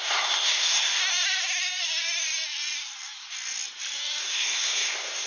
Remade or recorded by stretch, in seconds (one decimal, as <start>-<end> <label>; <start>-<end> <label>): 0.0-1.0 remade; 1.0-4.2 recorded; 4.2-5.3 remade